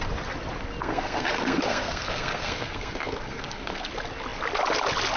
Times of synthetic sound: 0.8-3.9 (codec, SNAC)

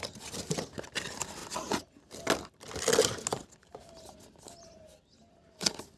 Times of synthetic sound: none

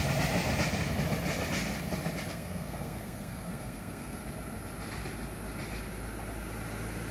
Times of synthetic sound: 2.3-4.2 (codec, SNAC)

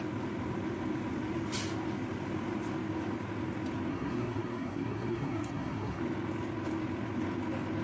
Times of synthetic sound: 3.9-6.0 (codec, SNAC)

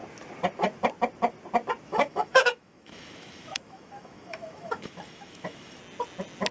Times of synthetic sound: 1.9-5.8 (autoencoder, DAC-VAE)

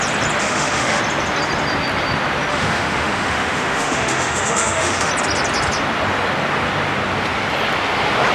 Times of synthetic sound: 0.4-1.0 (autoencoder, DAC-VAE); 2.5-5.1